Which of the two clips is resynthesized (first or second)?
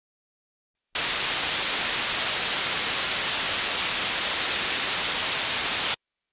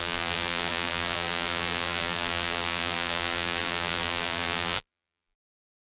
second